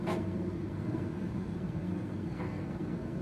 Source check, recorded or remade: remade